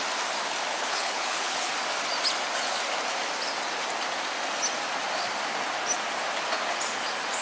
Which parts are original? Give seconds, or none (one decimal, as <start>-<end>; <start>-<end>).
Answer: 0.0-0.7; 1.7-7.4